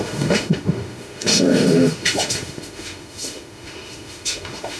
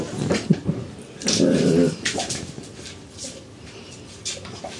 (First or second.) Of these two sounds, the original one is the second